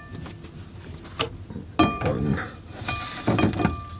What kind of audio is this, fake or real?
real